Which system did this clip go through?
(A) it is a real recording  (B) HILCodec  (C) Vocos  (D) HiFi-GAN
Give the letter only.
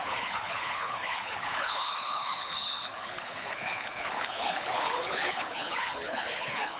B